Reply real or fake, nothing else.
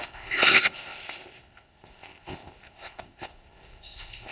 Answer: fake